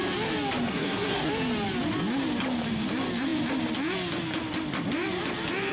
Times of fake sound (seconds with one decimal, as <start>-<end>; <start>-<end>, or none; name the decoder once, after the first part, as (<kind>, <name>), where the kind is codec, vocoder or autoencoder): 0.7-1.3 (codec, SNAC)